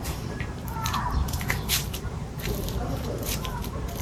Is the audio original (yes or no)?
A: no